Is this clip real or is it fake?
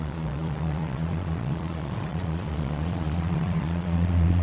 fake